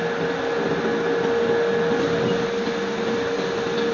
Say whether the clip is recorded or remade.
recorded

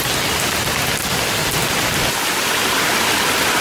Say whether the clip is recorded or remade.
recorded